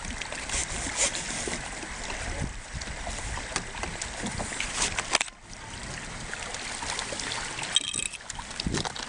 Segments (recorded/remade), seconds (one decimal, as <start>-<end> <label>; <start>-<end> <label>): 0.0-9.1 recorded

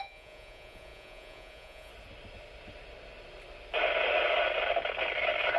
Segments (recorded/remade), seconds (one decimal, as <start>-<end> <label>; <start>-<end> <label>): 0.0-1.9 remade; 1.9-5.6 recorded

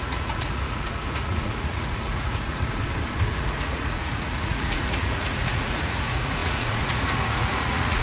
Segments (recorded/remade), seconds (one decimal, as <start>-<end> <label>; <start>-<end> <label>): 0.0-2.8 remade; 2.8-3.3 recorded; 3.3-8.0 remade

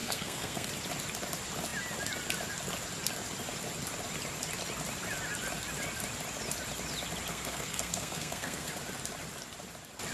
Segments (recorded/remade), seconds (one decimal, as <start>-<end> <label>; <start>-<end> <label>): 0.0-0.7 remade; 0.7-7.3 recorded; 7.3-8.7 remade; 8.7-10.1 recorded

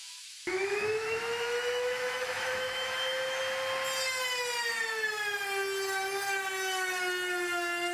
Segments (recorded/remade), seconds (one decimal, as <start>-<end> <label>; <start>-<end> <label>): 0.0-3.4 remade; 3.4-7.9 recorded